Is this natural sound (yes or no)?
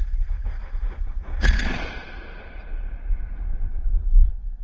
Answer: no